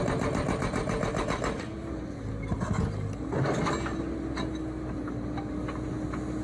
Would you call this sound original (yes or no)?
yes